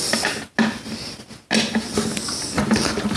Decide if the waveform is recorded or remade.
recorded